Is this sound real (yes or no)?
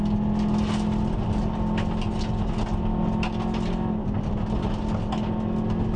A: yes